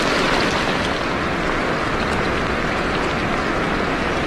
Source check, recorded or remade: recorded